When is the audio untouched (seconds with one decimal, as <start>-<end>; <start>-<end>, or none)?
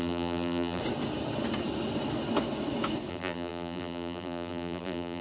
0.8-3.1